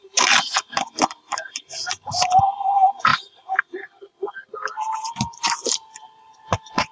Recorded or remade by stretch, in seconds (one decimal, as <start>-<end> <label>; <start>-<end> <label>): 0.0-6.9 remade